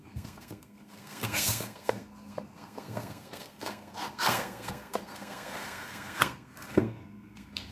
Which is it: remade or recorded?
remade